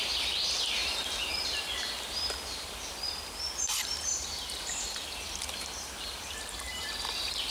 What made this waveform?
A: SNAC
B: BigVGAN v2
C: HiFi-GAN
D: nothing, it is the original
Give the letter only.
B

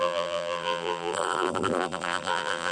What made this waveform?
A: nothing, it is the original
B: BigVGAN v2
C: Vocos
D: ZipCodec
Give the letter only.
B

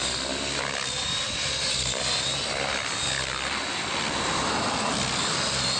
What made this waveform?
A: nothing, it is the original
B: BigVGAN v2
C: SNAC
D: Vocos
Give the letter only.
A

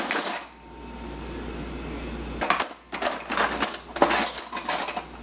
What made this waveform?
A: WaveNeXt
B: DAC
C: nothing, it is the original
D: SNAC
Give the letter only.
C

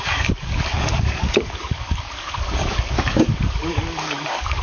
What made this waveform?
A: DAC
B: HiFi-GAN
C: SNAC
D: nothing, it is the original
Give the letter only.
A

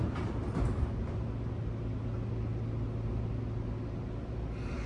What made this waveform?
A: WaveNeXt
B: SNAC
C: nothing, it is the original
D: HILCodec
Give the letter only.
C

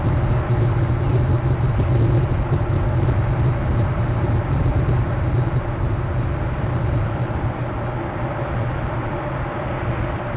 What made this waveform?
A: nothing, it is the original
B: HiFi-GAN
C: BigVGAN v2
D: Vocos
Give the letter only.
A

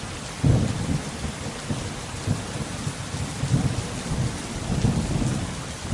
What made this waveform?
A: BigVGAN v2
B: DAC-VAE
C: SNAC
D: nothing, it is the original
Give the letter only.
D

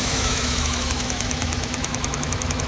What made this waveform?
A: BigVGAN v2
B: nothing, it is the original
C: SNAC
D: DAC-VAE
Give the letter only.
D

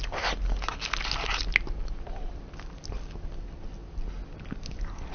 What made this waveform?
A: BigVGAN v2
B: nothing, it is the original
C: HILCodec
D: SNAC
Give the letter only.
B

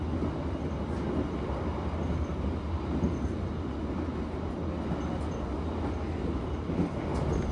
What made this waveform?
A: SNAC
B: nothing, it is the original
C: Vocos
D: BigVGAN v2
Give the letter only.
B